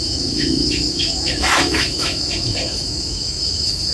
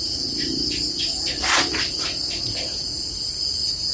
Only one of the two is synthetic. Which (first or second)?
first